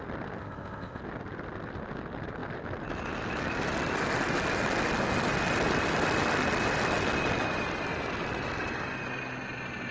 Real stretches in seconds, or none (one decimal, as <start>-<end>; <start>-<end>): 0.0-0.4; 1.0-9.9